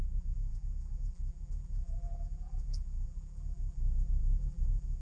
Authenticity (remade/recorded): remade